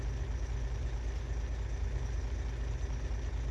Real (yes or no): yes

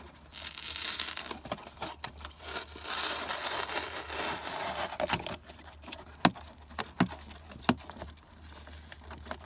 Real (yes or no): yes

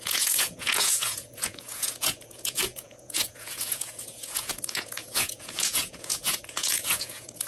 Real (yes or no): no